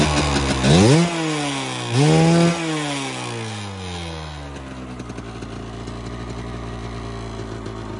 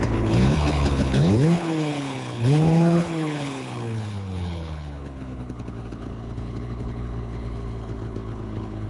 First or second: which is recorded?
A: first